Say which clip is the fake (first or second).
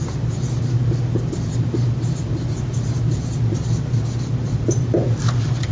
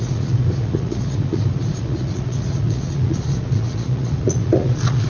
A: second